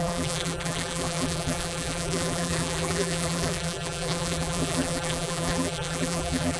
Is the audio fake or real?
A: fake